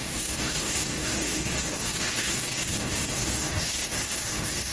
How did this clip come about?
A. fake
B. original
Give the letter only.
A